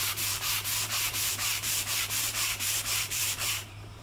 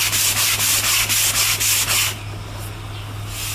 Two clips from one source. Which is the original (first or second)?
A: second